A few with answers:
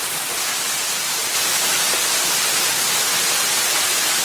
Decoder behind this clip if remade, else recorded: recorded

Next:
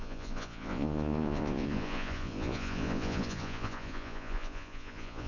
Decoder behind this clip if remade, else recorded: remade, vocoder, Vocos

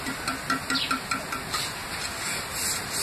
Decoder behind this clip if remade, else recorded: recorded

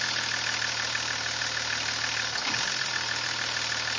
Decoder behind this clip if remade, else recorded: recorded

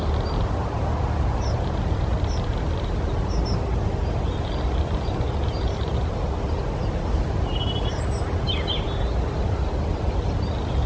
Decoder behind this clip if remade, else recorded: recorded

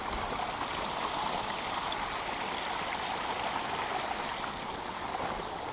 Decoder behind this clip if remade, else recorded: recorded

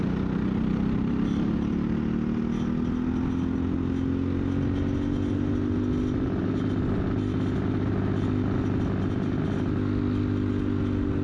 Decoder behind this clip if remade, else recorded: recorded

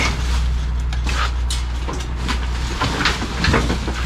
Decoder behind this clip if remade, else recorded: recorded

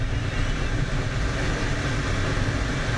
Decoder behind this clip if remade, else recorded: recorded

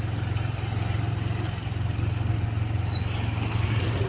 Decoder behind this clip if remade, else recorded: recorded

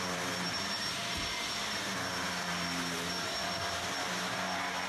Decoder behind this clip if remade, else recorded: remade, vocoder, BigVGAN v2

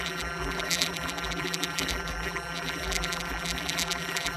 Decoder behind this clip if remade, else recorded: remade, vocoder, BigVGAN v2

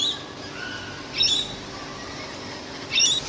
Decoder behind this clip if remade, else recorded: recorded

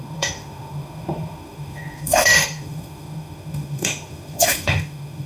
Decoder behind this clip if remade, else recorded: remade, autoencoder, DAC-VAE